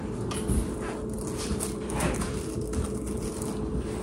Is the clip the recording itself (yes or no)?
yes